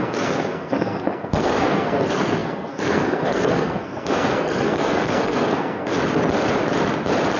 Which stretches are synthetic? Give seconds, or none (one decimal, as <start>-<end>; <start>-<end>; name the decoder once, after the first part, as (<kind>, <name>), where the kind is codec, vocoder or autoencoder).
0.0-5.9 (codec, SNAC)